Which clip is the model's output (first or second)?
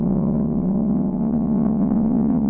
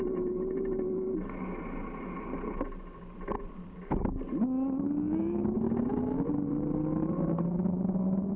first